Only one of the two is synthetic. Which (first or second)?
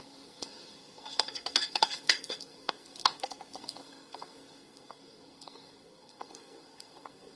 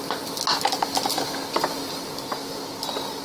first